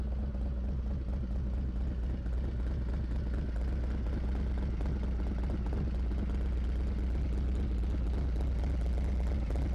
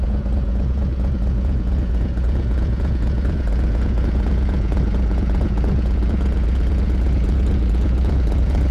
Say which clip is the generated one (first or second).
second